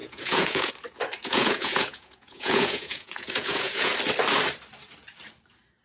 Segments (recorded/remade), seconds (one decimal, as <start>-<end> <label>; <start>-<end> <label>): 0.0-0.7 remade; 0.7-1.2 recorded; 1.2-3.9 remade; 3.9-5.8 recorded